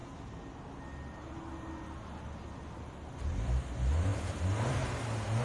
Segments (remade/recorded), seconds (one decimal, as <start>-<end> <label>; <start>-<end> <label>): 0.0-5.4 recorded